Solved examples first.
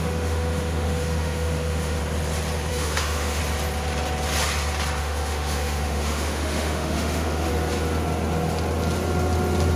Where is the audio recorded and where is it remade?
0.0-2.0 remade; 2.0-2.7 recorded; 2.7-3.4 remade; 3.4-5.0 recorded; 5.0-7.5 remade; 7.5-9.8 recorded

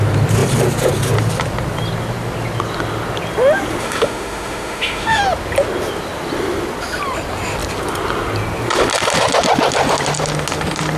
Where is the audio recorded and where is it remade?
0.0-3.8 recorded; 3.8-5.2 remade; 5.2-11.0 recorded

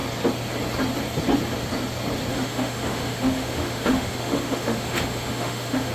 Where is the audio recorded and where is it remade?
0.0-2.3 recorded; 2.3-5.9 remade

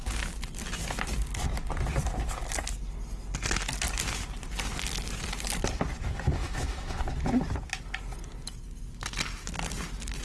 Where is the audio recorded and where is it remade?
0.0-6.4 recorded; 6.4-7.0 remade; 7.0-10.2 recorded

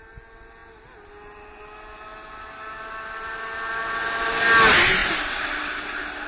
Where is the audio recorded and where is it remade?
0.0-6.3 recorded

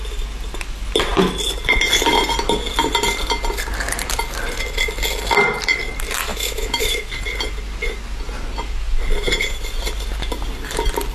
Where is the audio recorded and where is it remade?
0.0-6.3 recorded; 6.3-7.1 remade; 7.1-11.1 recorded